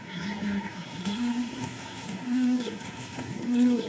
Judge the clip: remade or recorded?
remade